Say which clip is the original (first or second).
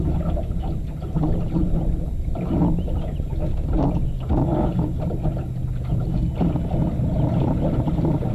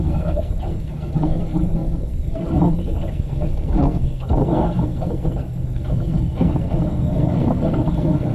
first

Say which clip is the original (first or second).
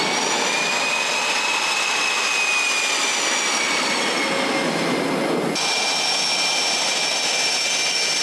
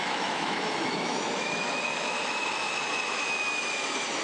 first